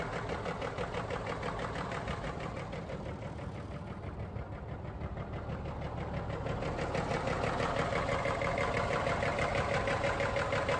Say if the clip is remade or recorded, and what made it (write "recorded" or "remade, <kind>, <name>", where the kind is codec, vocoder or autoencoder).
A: recorded